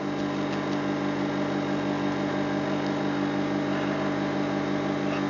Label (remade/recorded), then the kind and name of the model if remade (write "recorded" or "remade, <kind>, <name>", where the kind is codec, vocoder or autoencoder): recorded